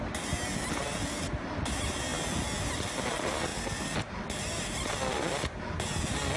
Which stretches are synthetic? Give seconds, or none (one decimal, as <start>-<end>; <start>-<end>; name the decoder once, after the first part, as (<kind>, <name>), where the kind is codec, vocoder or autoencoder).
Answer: none